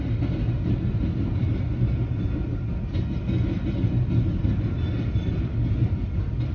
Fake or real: real